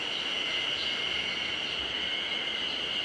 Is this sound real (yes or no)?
yes